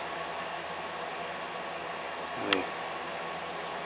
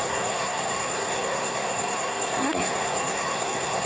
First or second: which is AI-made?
second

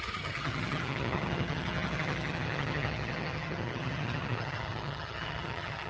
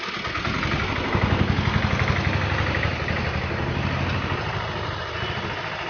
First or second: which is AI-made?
first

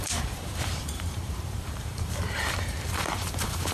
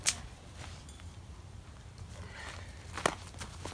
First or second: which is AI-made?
first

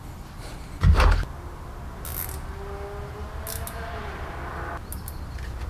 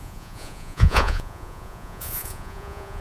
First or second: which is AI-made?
second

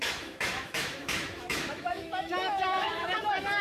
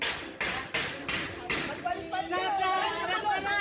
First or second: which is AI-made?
first